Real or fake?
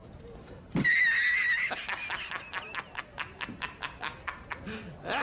real